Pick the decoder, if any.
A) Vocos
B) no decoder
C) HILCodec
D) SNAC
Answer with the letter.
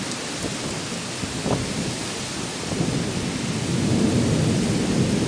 B